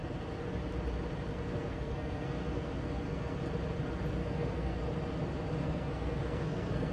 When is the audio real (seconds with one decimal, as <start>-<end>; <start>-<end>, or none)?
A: 0.0-1.3; 3.4-4.2; 4.8-5.6